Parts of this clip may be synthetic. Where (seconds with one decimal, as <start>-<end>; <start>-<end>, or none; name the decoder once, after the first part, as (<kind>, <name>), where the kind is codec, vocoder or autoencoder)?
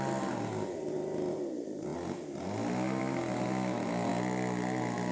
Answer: none